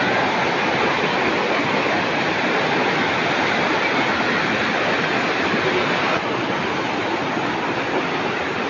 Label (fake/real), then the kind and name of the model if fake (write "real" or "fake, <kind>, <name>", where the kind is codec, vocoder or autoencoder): real